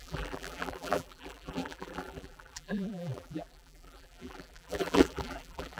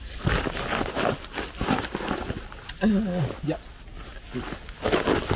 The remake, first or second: first